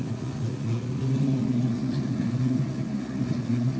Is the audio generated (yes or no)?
yes